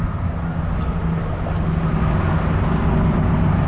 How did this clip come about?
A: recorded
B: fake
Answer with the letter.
A